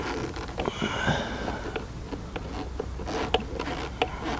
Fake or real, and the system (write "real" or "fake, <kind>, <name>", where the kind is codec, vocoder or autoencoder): real